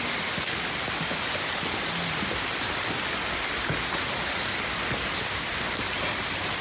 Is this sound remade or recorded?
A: recorded